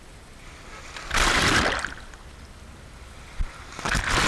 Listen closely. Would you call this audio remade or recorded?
recorded